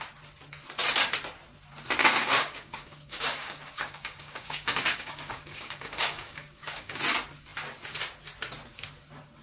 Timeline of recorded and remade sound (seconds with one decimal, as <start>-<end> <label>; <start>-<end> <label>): 0.0-2.0 recorded; 2.0-7.0 remade; 7.0-9.4 recorded